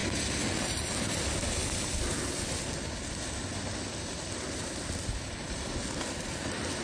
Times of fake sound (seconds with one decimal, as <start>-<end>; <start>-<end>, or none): none